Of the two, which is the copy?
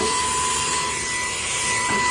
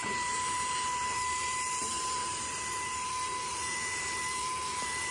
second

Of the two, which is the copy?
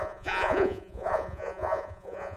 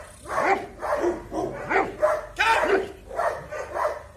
first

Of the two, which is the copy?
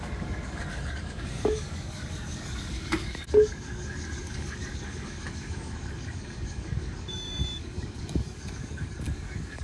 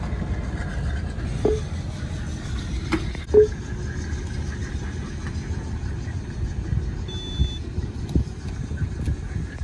first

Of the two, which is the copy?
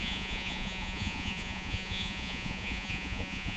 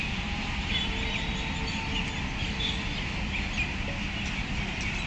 first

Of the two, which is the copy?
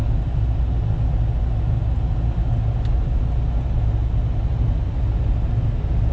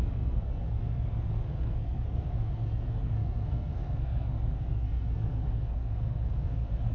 second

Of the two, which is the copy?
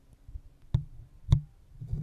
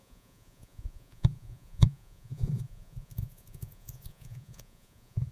second